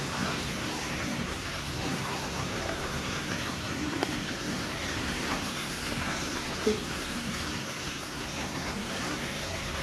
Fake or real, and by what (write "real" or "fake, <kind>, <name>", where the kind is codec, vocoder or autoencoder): fake, codec, SNAC